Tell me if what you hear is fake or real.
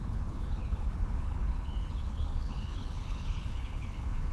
fake